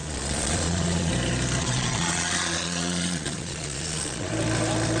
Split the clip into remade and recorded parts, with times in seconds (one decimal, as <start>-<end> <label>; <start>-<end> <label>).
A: 0.0-1.1 remade; 1.1-1.6 recorded; 1.6-4.3 remade; 4.3-5.0 recorded